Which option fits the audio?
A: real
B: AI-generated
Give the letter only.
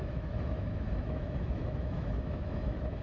B